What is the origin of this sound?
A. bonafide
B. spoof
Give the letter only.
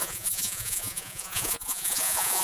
B